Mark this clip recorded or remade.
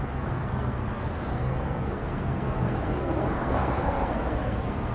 remade